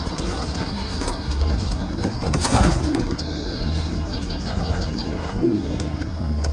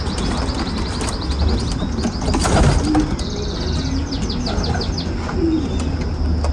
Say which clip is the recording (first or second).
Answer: second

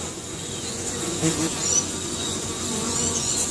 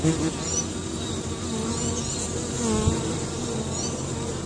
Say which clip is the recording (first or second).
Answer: second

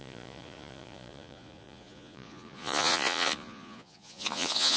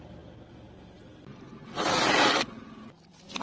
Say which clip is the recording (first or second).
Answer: second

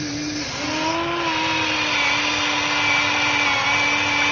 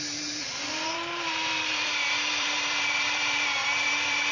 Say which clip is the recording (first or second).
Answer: first